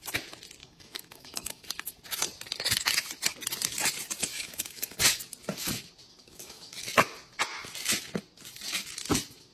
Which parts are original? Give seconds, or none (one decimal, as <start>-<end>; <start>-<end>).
0.0-0.6; 1.7-4.3; 5.2-6.1; 6.8-9.5